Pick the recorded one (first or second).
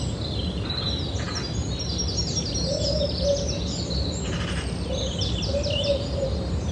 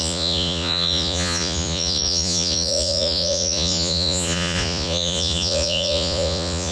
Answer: first